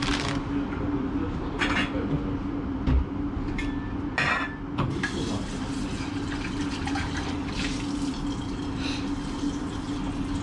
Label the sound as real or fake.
real